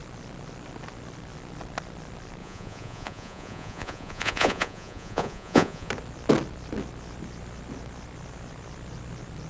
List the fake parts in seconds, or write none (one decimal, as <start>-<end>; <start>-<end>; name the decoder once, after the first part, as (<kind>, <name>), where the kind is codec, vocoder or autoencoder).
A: 2.4-5.9 (vocoder, Vocos)